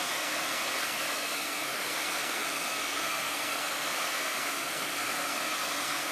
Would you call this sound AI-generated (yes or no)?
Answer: yes